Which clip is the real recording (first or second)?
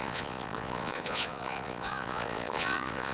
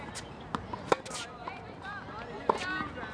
second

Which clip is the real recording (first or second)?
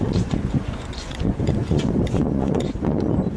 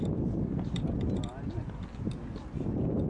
second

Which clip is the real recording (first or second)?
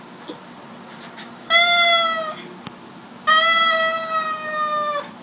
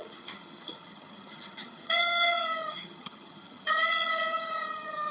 first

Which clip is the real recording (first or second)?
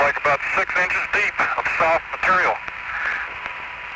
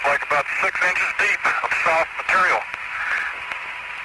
first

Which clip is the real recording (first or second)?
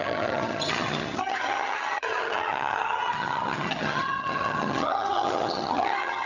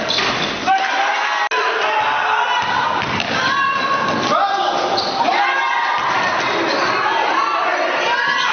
second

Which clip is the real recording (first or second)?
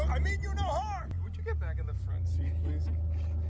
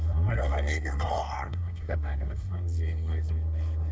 first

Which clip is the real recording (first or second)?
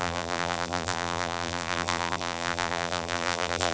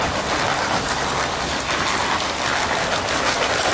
second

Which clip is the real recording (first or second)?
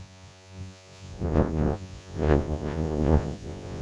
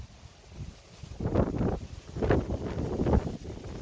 second